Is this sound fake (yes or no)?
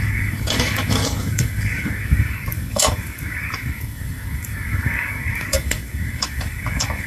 yes